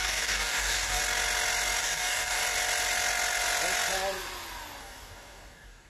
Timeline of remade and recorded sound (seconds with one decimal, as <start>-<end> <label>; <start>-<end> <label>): 0.0-1.0 remade; 1.0-1.8 recorded; 1.8-2.4 remade; 2.4-4.8 recorded; 4.8-5.9 remade